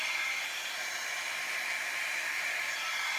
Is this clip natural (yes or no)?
yes